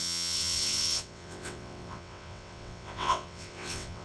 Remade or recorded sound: remade